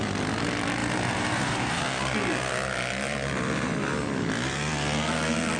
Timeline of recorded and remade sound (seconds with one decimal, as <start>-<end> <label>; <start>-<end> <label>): 0.0-0.8 recorded; 0.8-1.8 remade; 1.8-5.6 recorded